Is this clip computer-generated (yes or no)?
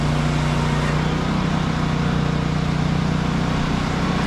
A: no